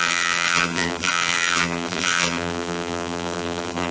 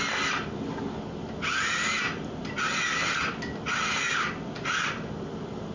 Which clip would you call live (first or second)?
second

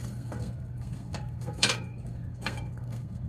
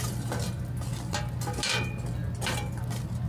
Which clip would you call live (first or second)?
second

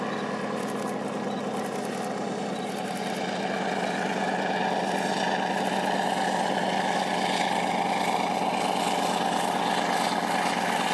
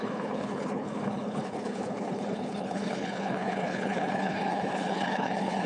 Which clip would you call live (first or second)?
first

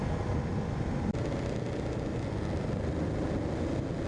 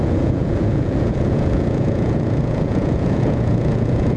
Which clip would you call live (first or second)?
first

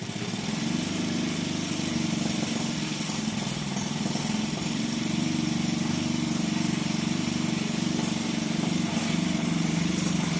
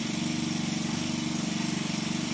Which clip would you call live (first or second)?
second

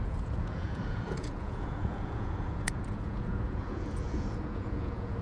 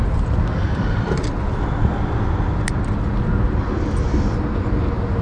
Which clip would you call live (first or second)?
second